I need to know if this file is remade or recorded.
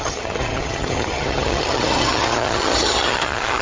remade